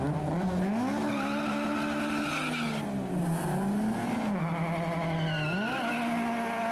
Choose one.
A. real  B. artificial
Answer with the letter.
A